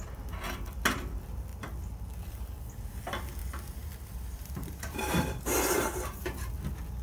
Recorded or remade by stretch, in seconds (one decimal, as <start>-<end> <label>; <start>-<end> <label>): 0.0-3.4 recorded; 3.4-6.5 remade; 6.5-7.0 recorded